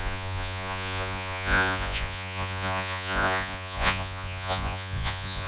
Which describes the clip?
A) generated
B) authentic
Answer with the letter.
A